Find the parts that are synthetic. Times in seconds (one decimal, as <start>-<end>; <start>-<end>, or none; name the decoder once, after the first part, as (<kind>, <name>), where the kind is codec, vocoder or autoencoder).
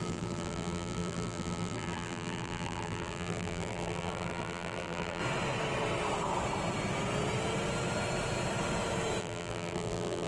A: 0.0-5.2 (vocoder, BigVGAN v2); 9.2-10.3